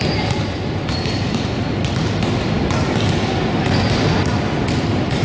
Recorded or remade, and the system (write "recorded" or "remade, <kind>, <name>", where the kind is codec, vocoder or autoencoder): recorded